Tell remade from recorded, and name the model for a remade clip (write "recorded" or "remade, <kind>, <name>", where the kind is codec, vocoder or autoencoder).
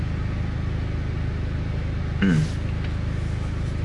recorded